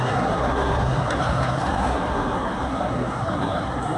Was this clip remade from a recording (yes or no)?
yes